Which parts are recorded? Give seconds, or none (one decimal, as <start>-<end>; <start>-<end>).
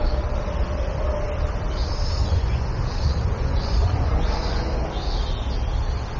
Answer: 0.0-2.2; 4.6-6.2